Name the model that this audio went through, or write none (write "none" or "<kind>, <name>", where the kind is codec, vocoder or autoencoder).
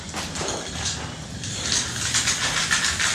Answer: none